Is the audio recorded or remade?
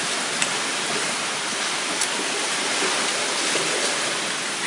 recorded